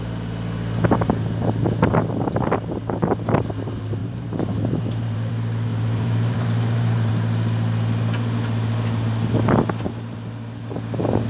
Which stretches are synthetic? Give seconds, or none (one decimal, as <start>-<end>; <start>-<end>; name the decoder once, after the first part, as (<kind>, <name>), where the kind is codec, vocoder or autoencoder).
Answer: 4.0-5.3 (vocoder, BigVGAN v2); 5.7-7.1

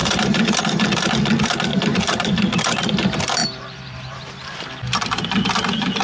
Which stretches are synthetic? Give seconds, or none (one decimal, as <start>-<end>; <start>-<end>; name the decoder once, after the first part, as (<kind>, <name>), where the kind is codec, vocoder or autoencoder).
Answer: 0.0-0.6 (vocoder, BigVGAN v2); 1.7-2.3; 3.4-4.7